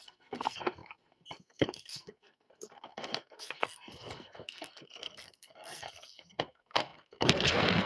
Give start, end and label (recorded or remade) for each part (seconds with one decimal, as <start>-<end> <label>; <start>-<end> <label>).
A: 0.0-7.9 remade